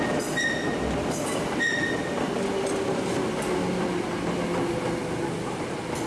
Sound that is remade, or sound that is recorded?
recorded